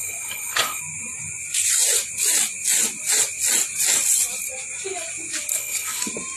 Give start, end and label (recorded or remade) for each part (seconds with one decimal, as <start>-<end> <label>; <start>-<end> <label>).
0.0-0.8 remade; 0.8-5.5 recorded; 5.5-6.0 remade; 6.0-6.4 recorded